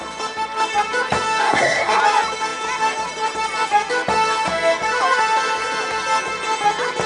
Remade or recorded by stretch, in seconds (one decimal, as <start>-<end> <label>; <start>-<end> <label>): 0.0-1.4 recorded; 1.4-2.0 remade; 2.0-7.1 recorded

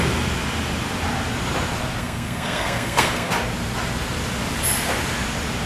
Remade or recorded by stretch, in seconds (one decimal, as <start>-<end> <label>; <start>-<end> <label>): 0.0-2.0 recorded; 2.0-3.3 remade; 3.3-5.7 recorded

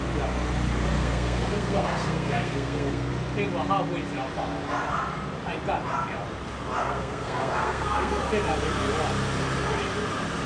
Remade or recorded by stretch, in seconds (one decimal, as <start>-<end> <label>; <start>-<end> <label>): 0.0-1.0 recorded; 1.0-3.1 remade; 3.1-6.8 recorded; 6.8-8.2 remade; 8.2-10.5 recorded

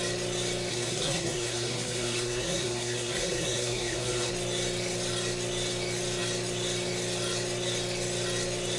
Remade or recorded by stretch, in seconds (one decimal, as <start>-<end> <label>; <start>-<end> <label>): 0.0-0.7 recorded; 0.7-4.3 remade; 4.3-8.8 recorded

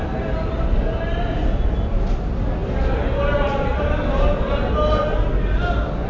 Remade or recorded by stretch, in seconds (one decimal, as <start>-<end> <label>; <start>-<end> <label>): 0.0-6.1 recorded

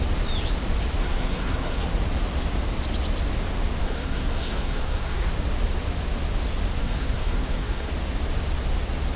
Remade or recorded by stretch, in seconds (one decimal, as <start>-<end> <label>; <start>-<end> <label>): 0.0-1.0 recorded; 1.0-1.8 remade; 1.8-3.8 recorded; 3.8-5.3 remade; 5.3-6.8 recorded; 6.8-7.9 remade; 7.9-9.2 recorded

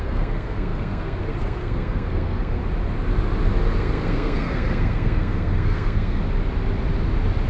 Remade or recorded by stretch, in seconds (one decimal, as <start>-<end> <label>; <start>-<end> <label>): 0.0-2.6 remade; 2.6-3.8 recorded; 3.8-6.2 remade; 6.2-7.5 recorded

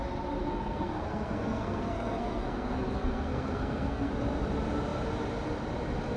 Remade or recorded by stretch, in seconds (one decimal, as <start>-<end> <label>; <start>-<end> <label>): 0.0-0.4 recorded; 0.4-4.1 remade; 4.1-6.2 recorded